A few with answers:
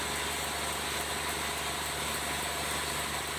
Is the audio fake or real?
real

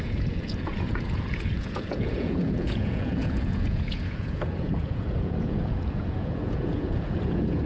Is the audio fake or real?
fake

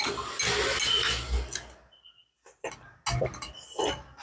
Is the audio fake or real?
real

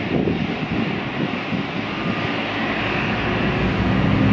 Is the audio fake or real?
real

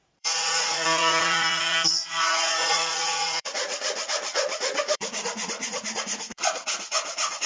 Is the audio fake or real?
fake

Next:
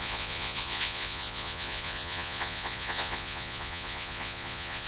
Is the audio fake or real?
fake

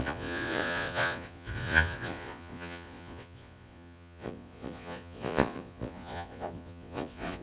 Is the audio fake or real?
fake